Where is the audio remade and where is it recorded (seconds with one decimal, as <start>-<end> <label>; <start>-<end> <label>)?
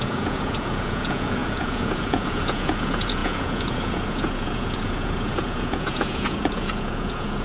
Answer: 0.0-7.4 remade